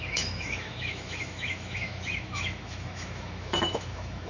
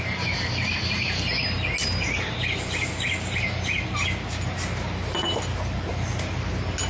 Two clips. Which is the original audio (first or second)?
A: second